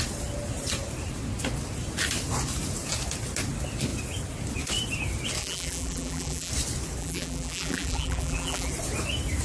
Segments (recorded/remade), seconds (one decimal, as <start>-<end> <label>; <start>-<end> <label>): 0.0-5.4 recorded; 5.4-6.5 remade; 6.5-7.0 recorded; 7.0-8.7 remade; 8.7-9.4 recorded